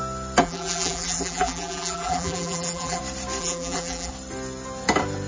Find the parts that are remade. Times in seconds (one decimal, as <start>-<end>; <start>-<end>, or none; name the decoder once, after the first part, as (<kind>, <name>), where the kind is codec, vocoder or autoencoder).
0.4-3.0 (vocoder, BigVGAN v2); 3.4-4.1